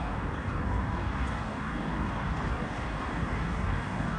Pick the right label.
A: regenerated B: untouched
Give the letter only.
A